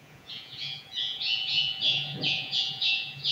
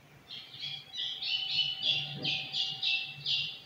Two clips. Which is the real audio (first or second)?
second